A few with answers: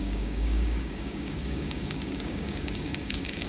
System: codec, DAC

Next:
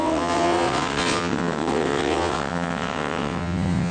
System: vocoder, WaveNeXt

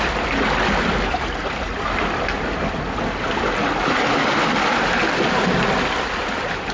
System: none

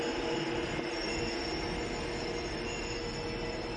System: none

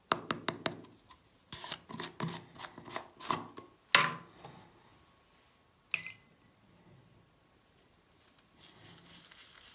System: none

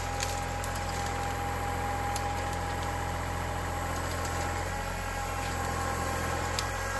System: none